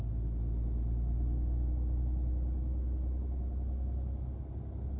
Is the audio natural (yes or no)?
yes